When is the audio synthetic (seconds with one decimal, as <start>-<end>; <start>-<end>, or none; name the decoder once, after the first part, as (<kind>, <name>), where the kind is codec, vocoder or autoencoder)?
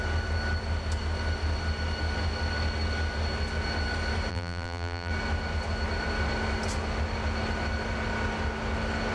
4.3-5.1 (vocoder, BigVGAN v2)